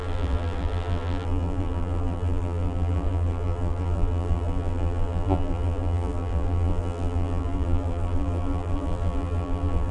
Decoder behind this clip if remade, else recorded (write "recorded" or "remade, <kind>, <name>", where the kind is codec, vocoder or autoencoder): remade, vocoder, BigVGAN v2